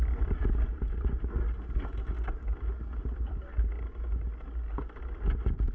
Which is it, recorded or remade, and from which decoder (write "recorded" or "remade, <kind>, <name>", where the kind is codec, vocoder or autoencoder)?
recorded